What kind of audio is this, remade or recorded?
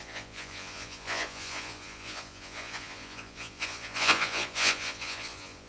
remade